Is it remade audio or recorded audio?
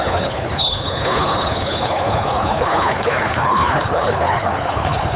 remade